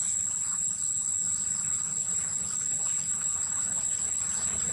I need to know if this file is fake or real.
real